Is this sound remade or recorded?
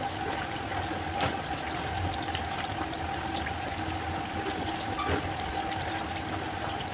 recorded